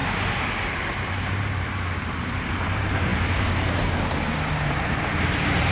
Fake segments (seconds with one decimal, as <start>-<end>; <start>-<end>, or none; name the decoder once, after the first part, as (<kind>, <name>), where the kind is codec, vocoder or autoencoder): 0.0-5.7 (vocoder, BigVGAN v2)